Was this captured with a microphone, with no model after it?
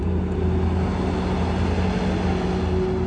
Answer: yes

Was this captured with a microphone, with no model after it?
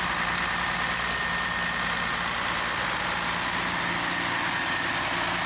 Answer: yes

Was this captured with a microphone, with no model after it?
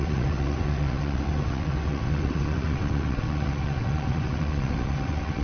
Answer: no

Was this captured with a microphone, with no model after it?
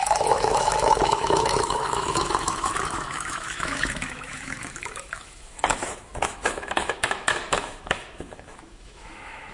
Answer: no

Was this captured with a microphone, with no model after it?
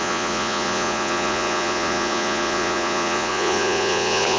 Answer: no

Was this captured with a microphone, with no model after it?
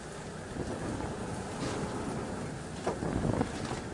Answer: yes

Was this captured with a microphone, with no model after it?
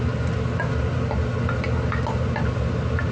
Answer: yes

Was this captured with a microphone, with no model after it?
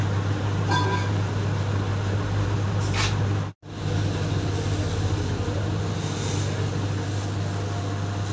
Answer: yes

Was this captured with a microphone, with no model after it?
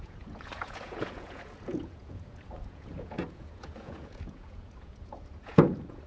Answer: no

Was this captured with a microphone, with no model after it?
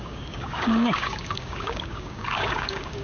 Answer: no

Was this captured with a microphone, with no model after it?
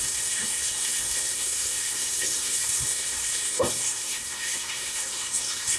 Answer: no